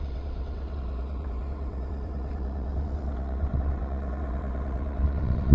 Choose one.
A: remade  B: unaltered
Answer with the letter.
A